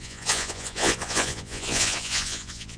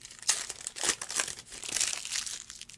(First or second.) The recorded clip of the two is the second